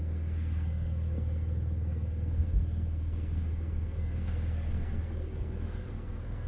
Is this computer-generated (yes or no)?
yes